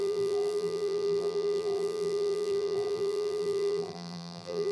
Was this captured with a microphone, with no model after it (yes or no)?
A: no